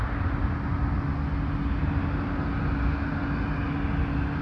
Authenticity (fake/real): real